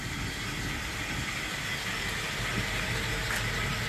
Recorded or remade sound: recorded